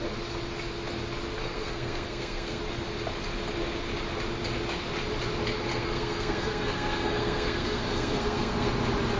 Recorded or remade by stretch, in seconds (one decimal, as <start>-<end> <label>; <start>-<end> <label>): 0.0-1.4 recorded; 1.4-2.6 remade; 2.6-5.7 recorded; 5.7-8.7 remade; 8.7-9.2 recorded